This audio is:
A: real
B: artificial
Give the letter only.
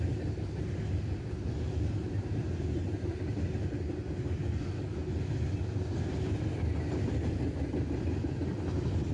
A